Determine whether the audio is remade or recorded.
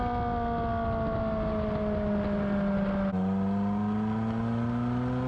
recorded